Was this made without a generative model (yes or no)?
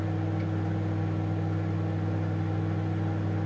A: yes